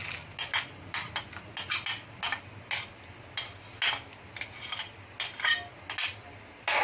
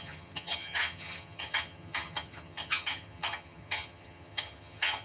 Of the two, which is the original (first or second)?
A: first